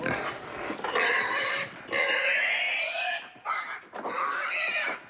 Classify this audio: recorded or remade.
recorded